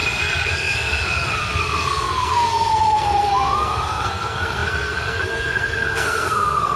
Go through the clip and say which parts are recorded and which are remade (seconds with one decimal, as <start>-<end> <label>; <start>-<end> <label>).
0.0-6.8 remade